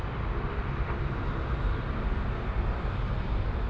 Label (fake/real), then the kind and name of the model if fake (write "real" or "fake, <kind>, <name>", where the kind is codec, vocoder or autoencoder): fake, vocoder, BigVGAN v2